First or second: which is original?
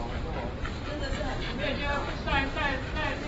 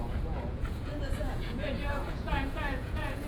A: first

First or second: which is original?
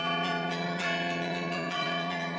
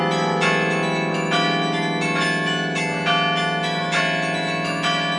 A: second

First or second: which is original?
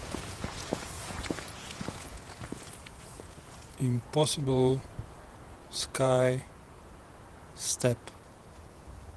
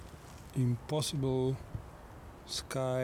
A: second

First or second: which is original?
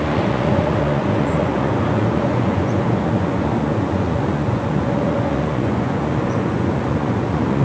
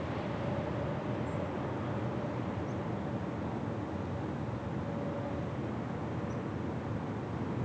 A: second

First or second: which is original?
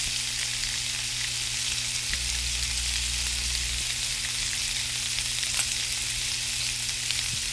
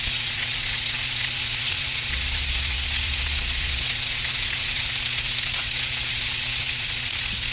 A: first